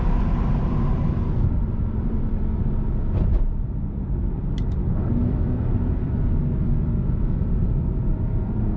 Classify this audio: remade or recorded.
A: remade